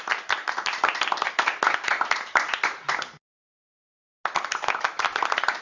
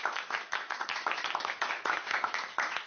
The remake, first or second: second